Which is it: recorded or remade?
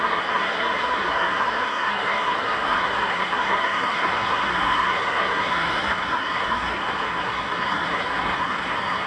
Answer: remade